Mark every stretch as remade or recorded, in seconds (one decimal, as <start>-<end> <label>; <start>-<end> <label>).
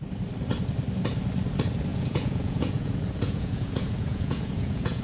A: 0.0-1.9 recorded; 1.9-5.0 remade